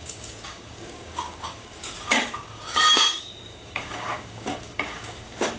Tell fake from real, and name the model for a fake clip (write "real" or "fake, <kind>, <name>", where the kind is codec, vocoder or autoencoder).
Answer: fake, codec, DAC